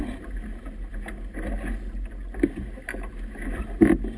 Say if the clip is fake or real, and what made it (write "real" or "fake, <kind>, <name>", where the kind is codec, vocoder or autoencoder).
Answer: real